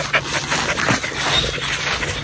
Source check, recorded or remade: recorded